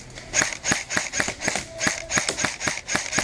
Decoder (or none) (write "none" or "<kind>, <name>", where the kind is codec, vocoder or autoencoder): none